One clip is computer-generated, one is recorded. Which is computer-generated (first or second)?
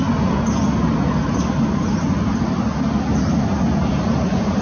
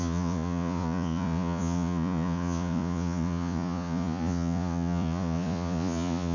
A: second